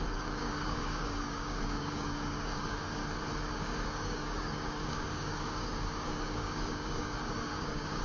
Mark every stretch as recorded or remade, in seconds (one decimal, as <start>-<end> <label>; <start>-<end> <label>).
0.0-3.0 remade; 3.0-3.5 recorded; 3.5-8.0 remade